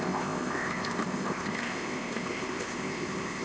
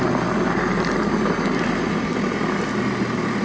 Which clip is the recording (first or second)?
second